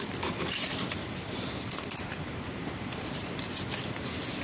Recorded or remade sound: remade